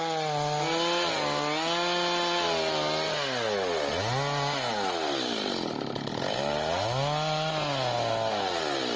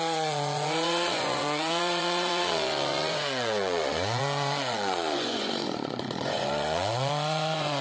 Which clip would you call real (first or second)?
first